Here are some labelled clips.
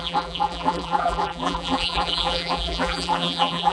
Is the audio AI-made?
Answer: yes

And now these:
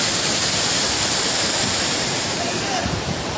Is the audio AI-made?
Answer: yes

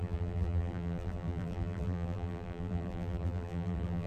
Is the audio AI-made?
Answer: yes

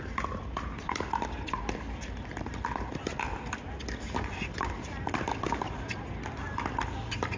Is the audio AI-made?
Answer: no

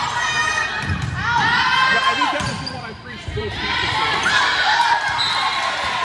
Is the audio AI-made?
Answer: yes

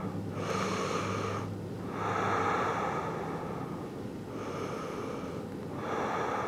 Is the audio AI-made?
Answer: no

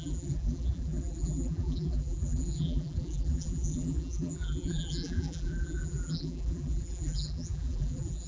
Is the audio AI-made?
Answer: yes